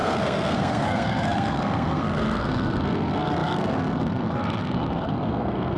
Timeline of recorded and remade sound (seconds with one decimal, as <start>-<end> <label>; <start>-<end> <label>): 0.0-5.8 remade